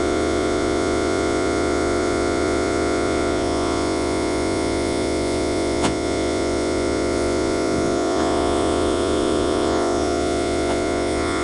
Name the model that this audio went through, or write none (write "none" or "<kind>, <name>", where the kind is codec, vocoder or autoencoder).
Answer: vocoder, Vocos